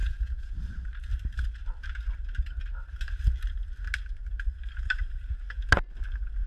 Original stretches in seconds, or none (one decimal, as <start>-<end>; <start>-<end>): 0.5-6.5

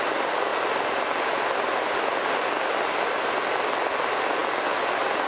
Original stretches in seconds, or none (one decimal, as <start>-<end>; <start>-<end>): 0.0-5.3